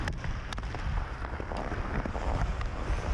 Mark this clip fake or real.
real